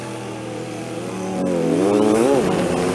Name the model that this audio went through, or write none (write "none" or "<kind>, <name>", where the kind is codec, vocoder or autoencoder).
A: none